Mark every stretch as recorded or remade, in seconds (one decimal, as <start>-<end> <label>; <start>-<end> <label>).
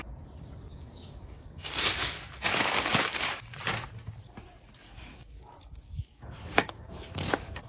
0.0-0.7 recorded; 0.7-3.7 remade; 3.7-4.8 recorded; 4.8-7.7 remade